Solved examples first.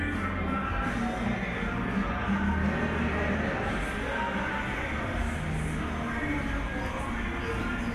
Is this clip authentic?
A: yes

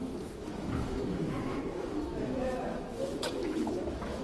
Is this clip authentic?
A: no